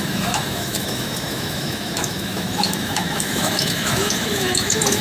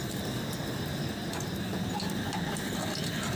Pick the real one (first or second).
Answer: second